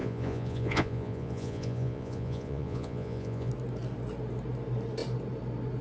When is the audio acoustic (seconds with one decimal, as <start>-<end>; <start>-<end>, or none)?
3.5-5.8